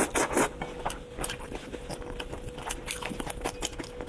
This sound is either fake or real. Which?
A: real